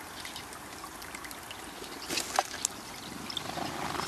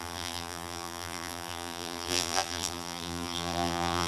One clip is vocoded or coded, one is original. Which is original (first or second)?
first